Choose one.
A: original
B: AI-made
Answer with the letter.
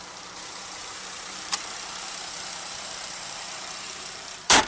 B